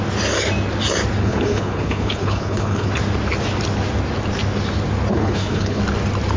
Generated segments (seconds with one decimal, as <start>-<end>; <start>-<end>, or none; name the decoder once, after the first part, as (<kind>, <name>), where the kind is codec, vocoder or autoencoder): 1.2-2.9 (codec, HILCodec); 5.1-5.8